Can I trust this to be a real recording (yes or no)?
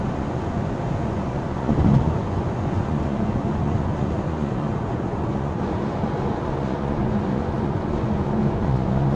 no